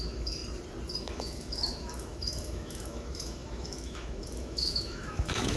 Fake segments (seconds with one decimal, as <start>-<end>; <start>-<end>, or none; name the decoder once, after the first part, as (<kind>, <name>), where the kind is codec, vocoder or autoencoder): 0.0-0.4 (autoencoder, DAC-VAE); 1.0-5.6